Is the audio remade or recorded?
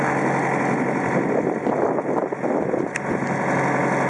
recorded